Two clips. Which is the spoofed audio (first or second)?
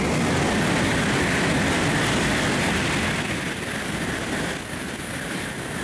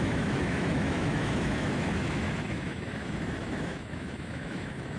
second